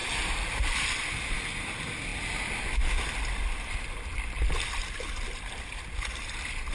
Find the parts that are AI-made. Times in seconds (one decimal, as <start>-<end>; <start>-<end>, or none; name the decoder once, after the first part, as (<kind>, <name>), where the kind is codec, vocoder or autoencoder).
none

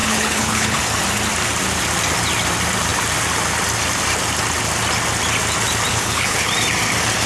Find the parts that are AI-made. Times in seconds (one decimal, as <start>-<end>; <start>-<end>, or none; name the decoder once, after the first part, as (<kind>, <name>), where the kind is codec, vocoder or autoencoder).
0.0-0.8 (codec, HILCodec); 5.9-6.5

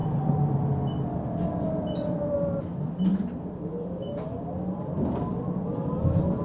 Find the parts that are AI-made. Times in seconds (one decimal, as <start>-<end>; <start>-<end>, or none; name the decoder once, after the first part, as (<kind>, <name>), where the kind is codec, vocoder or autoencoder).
0.0-0.6 (vocoder, BigVGAN v2); 3.1-4.2

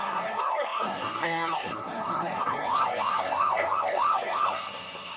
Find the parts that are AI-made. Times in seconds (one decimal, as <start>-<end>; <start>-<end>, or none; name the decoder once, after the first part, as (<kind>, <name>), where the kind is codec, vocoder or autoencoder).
0.0-5.2 (codec, SNAC)